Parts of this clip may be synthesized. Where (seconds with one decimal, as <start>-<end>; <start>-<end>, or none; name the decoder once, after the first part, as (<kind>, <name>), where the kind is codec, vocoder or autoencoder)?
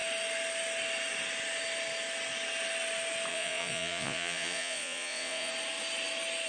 3.3-5.5 (vocoder, Vocos)